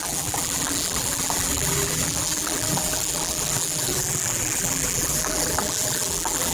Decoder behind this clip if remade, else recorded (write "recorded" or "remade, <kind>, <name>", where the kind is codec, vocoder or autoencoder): remade, vocoder, BigVGAN v2